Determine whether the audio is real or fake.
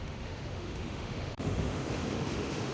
fake